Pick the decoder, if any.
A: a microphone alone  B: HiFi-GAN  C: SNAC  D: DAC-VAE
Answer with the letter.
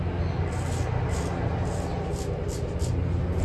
A